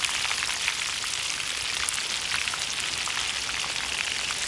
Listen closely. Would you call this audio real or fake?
real